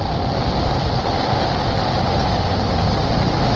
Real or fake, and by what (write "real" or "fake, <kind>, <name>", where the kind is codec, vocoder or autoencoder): real